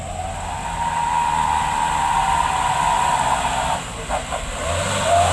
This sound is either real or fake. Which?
real